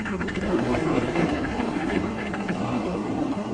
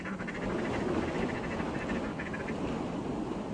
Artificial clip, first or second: first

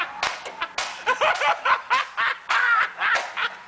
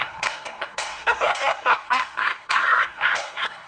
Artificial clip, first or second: second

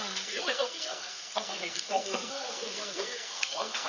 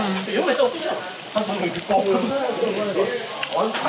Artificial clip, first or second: first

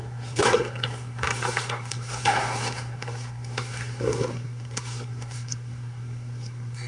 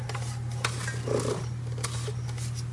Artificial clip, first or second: first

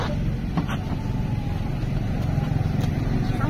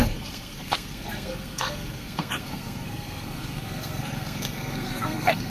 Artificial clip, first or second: second